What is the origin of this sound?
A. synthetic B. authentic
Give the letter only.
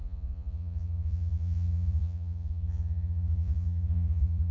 A